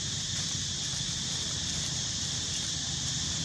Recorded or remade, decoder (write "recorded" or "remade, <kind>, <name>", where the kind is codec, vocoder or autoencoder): remade, vocoder, BigVGAN v2